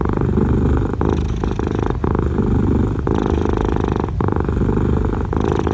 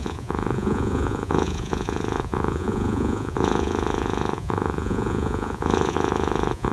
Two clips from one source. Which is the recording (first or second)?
first